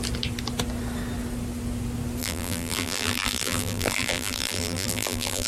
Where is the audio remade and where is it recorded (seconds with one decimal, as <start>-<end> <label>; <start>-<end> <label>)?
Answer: 0.0-2.2 recorded; 2.2-5.5 remade